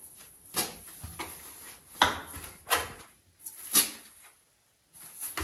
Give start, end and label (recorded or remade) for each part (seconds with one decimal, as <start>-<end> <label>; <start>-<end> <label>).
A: 0.0-5.4 recorded